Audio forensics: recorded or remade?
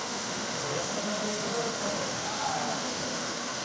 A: remade